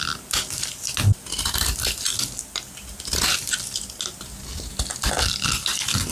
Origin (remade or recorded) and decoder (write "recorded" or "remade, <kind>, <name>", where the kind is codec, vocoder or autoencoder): recorded